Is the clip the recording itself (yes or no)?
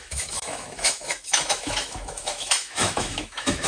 no